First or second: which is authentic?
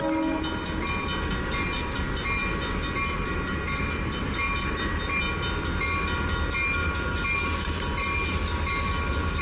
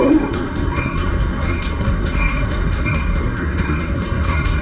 first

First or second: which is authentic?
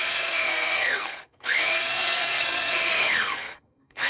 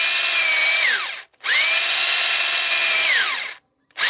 second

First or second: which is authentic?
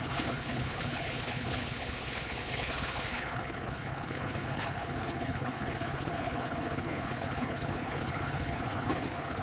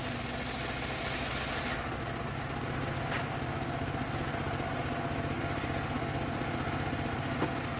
second